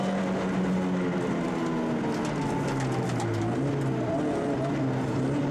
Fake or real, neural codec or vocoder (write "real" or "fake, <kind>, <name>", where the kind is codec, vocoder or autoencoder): real